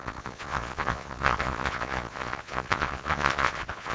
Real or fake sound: fake